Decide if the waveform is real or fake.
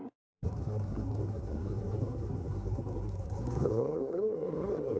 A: fake